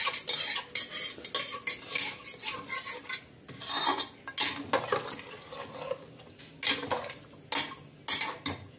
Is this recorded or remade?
recorded